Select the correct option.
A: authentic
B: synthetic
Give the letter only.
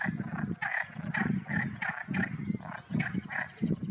A